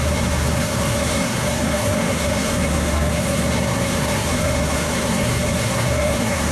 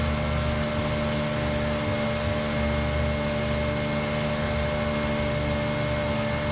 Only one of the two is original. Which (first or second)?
second